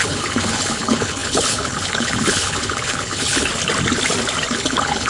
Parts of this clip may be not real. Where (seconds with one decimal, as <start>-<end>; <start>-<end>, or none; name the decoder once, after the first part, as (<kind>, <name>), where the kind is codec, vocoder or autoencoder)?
0.0-3.5 (codec, HILCodec); 4.5-5.1